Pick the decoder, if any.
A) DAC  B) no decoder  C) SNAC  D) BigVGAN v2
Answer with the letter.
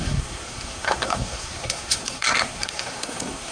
C